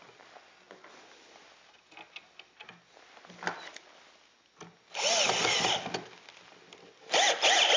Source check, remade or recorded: recorded